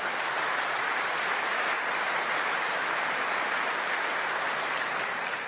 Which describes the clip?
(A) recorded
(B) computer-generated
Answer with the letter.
B